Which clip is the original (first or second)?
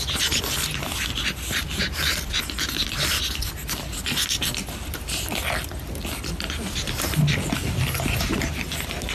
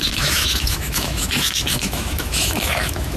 first